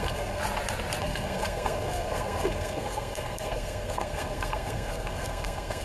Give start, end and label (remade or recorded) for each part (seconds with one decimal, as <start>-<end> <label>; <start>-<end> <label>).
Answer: 0.0-0.4 remade; 0.4-1.0 recorded; 1.0-5.8 remade